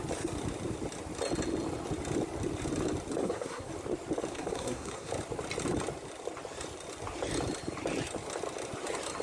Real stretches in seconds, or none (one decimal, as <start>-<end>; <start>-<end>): 0.0-3.2; 3.7-4.3; 5.1-9.2